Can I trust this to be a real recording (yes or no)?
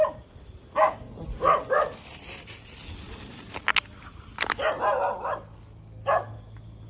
yes